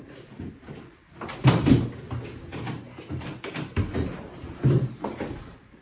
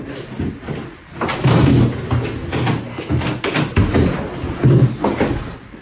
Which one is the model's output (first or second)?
first